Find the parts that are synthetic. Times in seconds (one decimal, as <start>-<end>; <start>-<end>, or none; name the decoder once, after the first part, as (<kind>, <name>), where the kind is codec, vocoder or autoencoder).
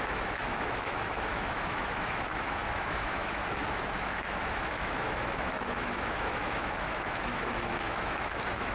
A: 0.0-8.7 (autoencoder, DAC-VAE)